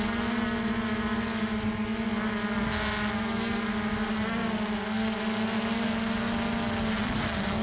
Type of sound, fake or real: real